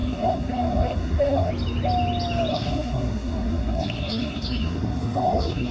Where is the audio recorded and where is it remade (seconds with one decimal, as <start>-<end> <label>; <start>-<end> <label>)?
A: 0.0-1.5 remade; 1.5-2.5 recorded; 2.5-5.7 remade